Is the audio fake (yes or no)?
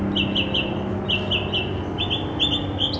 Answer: no